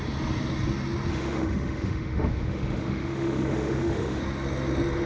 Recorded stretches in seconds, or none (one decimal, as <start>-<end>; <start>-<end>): 0.0-1.1; 4.2-5.1